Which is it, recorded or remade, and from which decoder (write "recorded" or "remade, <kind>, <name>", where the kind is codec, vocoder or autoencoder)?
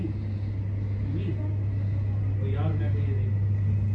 recorded